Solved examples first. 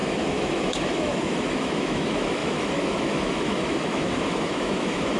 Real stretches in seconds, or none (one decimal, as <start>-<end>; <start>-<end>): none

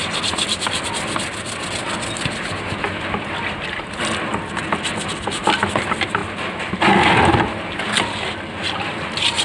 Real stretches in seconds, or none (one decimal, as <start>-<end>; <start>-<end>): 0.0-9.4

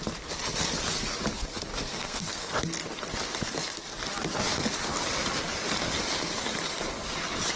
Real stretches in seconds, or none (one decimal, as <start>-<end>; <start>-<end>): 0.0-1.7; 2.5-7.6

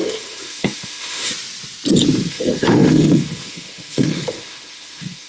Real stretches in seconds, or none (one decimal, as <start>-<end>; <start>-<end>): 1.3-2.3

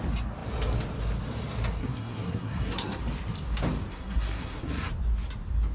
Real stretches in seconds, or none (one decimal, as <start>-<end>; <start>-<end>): 0.0-1.8; 3.0-3.9; 4.9-5.7